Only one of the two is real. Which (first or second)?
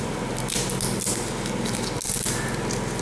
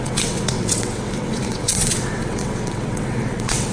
first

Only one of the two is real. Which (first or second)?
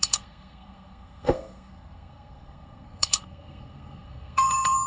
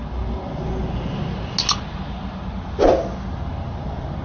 second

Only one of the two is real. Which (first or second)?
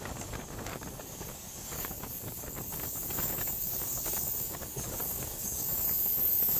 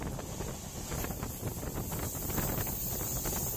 second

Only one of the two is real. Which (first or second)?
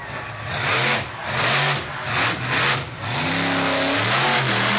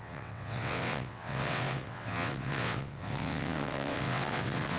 first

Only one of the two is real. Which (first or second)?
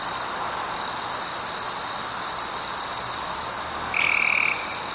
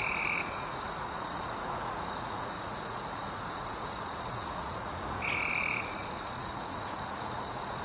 first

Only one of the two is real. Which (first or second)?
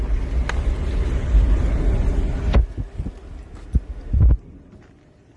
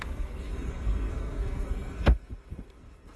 first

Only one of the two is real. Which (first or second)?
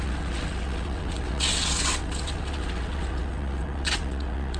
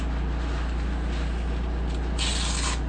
second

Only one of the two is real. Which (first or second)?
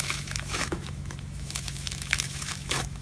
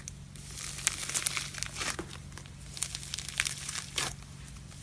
second